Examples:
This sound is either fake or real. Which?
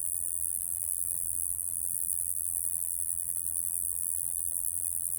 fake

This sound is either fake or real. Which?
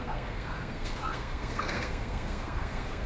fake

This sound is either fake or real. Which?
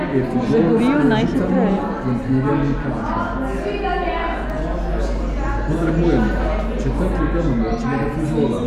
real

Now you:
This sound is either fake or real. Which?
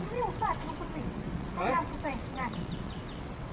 fake